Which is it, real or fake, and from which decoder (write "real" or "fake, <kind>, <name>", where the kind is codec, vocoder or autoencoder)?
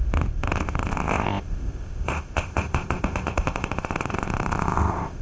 fake, codec, ZipCodec